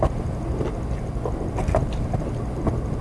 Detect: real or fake real